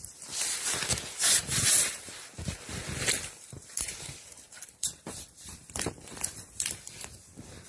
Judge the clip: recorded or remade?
remade